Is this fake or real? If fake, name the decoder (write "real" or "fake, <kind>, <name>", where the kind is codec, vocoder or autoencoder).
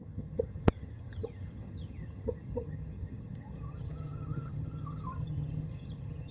fake, vocoder, HiFi-GAN